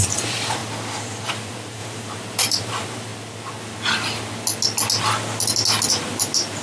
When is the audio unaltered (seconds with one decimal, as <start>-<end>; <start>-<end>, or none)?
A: 0.6-1.3; 3.1-5.9